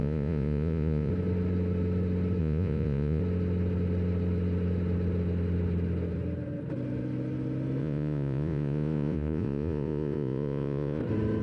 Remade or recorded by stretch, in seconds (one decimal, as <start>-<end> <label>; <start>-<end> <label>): 0.0-1.1 remade; 1.1-2.4 recorded; 2.4-3.2 remade; 3.2-7.8 recorded; 7.8-11.0 remade; 11.0-11.4 recorded